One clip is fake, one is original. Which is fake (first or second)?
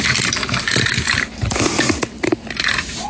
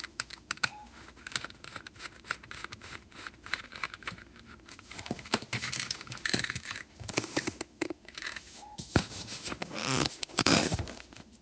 second